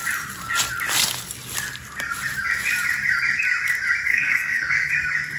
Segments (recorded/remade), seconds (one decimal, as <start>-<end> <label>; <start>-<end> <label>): 0.0-4.1 recorded; 4.1-4.9 remade; 4.9-5.4 recorded